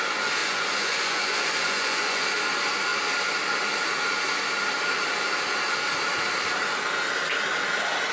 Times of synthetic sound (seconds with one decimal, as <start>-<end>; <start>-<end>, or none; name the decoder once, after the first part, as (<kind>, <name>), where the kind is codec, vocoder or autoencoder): 0.4-2.3 (vocoder, Vocos)